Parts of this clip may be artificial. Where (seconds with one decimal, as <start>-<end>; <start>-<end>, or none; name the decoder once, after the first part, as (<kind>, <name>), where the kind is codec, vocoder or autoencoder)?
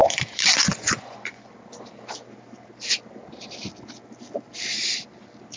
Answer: 0.0-1.5 (vocoder, Vocos)